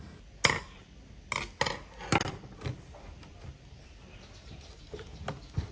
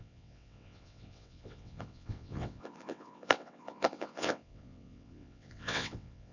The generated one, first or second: second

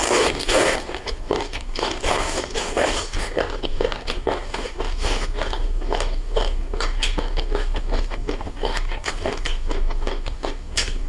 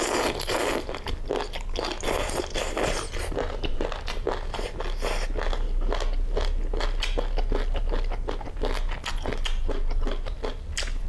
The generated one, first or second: first